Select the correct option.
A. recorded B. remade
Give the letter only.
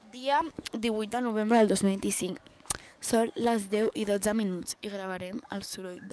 B